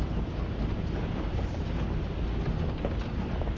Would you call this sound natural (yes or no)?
yes